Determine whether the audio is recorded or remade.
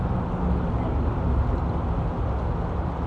recorded